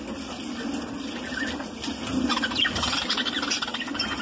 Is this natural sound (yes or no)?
yes